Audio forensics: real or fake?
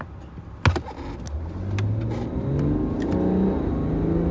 real